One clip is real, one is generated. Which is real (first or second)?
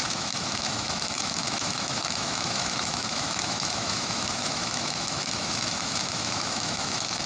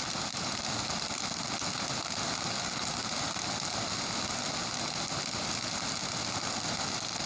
second